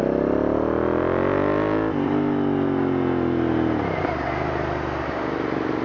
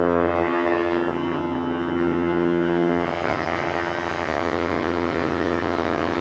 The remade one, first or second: second